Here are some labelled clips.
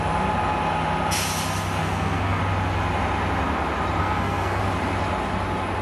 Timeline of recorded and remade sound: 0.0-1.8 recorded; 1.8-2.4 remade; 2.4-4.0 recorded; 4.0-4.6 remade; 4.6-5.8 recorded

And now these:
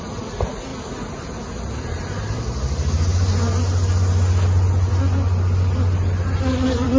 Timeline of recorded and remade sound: 0.0-7.0 recorded

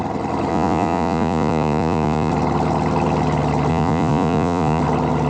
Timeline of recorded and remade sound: 0.0-0.5 recorded; 0.5-2.3 remade; 2.3-3.7 recorded; 3.7-4.8 remade; 4.8-5.3 recorded

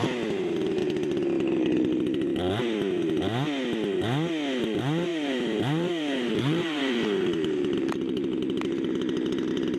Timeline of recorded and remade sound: 0.0-0.8 remade; 0.8-4.6 recorded; 4.6-9.8 remade

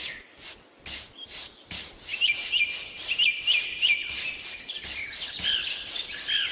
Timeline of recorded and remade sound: 0.0-6.5 recorded